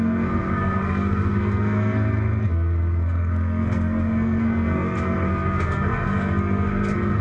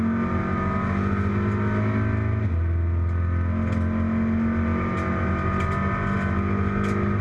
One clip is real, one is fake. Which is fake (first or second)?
first